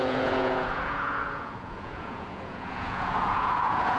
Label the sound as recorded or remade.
remade